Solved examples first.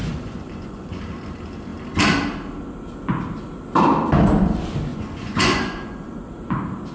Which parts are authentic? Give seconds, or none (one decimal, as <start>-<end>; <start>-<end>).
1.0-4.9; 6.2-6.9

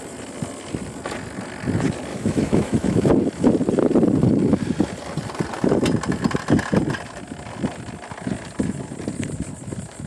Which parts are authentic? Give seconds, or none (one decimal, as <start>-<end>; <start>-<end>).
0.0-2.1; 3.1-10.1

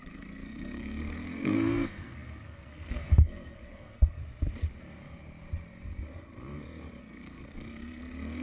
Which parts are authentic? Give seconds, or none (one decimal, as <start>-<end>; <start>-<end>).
4.2-7.0